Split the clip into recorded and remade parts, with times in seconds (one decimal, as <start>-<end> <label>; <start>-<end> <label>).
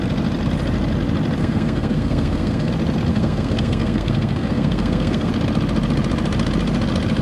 0.0-1.4 recorded; 1.4-2.7 remade; 2.7-3.1 recorded; 3.1-5.3 remade; 5.3-7.2 recorded